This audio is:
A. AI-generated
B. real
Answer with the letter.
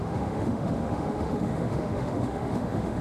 A